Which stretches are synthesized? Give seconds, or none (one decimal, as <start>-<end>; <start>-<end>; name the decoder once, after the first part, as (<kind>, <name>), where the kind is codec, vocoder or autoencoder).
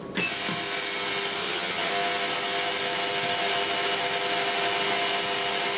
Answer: 1.4-1.9 (vocoder, HiFi-GAN)